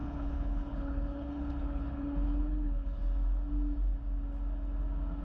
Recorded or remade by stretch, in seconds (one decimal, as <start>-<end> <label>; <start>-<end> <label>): 0.0-3.0 remade; 3.0-5.2 recorded